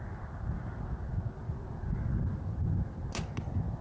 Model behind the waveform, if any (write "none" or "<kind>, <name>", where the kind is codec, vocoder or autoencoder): none